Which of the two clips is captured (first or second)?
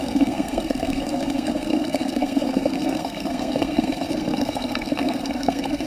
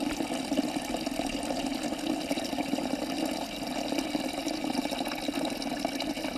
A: second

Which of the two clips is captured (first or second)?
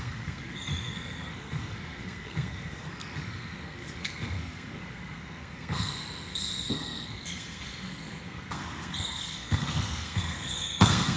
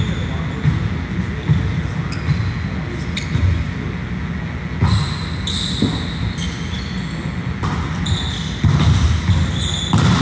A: second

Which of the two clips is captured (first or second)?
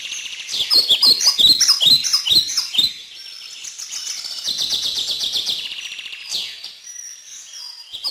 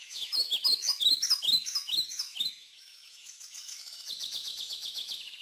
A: first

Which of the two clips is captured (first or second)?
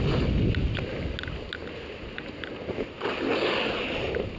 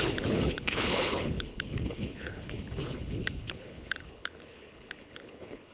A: first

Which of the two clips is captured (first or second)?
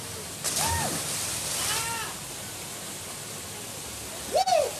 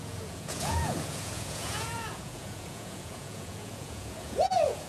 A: first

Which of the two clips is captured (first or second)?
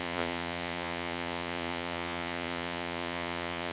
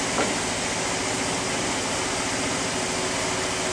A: second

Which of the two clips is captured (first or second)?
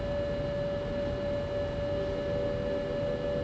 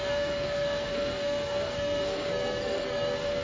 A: first